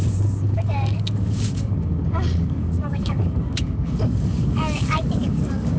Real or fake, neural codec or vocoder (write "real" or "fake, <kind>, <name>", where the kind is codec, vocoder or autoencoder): fake, codec, DAC